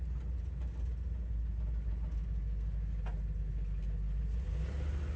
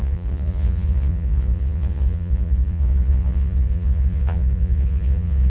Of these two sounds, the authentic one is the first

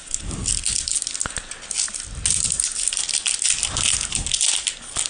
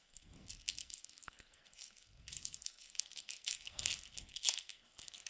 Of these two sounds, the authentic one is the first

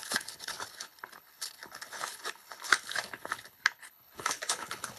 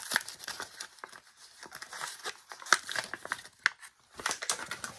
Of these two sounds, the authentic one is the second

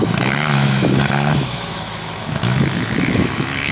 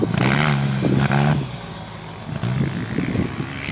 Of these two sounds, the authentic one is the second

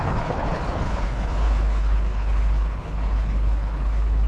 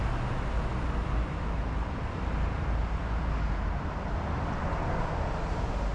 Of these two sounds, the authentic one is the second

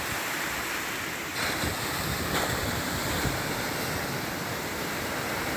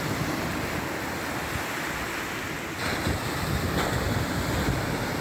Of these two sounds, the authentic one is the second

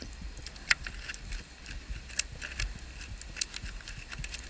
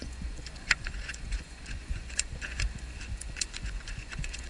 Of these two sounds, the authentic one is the first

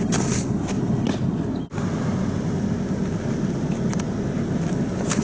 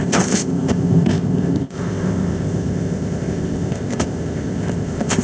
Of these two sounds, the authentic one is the first